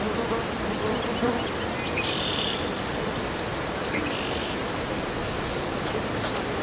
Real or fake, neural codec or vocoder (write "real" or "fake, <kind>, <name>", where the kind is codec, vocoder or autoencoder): real